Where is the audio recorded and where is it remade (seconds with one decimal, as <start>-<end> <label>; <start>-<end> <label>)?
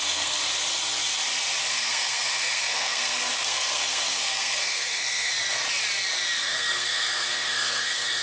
0.0-0.4 remade; 0.4-1.7 recorded; 1.7-5.3 remade; 5.3-6.4 recorded; 6.4-8.2 remade